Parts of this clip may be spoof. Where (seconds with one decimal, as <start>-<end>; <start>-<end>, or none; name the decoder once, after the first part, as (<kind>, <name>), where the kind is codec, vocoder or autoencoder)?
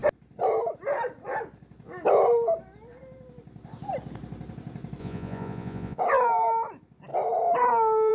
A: 5.0-6.0 (vocoder, Vocos)